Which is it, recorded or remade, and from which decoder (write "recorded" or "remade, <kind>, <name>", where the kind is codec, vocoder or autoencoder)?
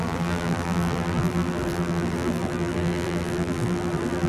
remade, vocoder, BigVGAN v2